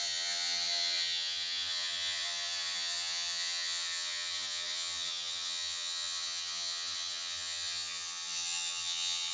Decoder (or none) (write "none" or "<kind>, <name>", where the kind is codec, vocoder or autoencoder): vocoder, HiFi-GAN